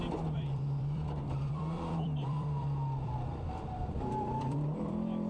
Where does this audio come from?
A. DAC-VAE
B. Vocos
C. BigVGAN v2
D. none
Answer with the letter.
C